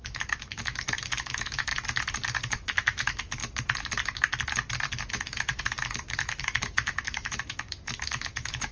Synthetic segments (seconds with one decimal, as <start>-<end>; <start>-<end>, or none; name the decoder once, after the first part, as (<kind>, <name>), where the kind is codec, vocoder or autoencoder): 0.0-1.7 (autoencoder, DAC-VAE); 2.4-3.4; 5.1-8.7